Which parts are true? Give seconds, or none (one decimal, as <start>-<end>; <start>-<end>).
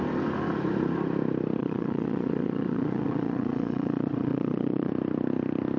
0.0-1.6; 4.9-5.8